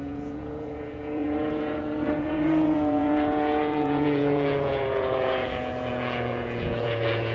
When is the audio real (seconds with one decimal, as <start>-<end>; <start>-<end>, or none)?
none